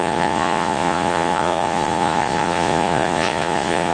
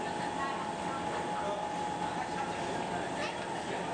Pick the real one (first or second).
second